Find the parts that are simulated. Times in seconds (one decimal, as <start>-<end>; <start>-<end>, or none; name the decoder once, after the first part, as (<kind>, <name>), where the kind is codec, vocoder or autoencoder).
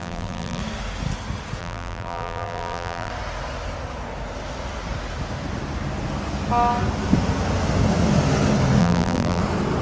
0.0-0.6 (vocoder, BigVGAN v2); 1.6-3.1; 8.8-9.4